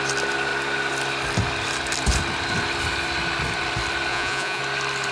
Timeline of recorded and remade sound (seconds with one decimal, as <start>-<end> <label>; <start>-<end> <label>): 0.0-4.1 recorded; 4.1-4.6 remade; 4.6-5.1 recorded